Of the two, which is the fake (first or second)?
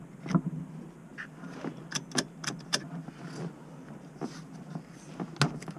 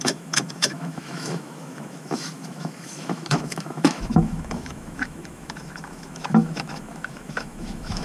second